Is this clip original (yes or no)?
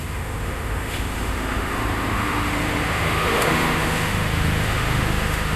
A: no